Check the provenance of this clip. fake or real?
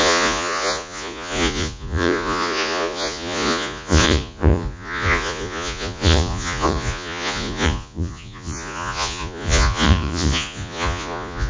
fake